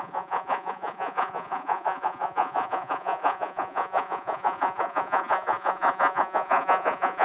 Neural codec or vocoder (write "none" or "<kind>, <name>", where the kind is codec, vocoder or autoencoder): vocoder, Vocos